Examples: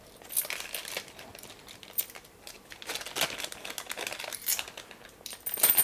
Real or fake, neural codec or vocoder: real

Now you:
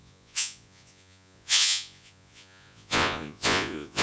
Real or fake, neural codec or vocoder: fake, vocoder, Vocos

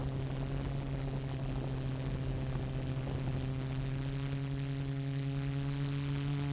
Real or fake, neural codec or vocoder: real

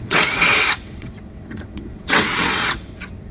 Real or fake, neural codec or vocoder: fake, vocoder, WaveNeXt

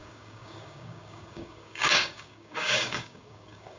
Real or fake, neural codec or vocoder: fake, codec, DAC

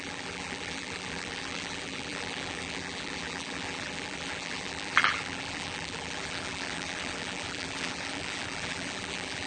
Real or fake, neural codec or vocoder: fake, vocoder, BigVGAN v2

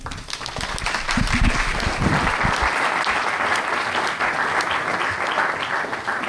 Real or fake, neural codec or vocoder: real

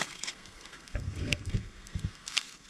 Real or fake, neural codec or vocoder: fake, codec, SNAC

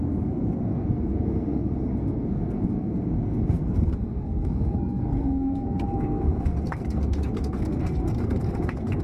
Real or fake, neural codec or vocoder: fake, codec, SNAC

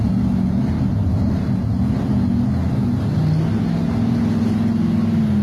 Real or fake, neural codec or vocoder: real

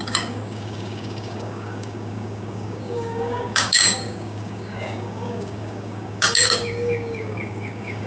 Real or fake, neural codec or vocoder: fake, codec, DAC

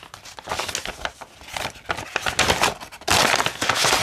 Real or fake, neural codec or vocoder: real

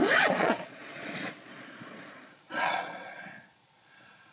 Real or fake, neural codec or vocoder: fake, vocoder, Vocos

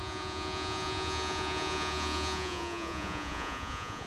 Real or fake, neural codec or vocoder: fake, vocoder, Vocos